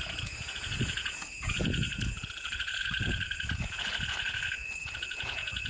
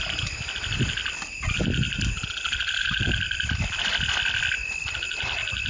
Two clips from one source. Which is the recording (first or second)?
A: second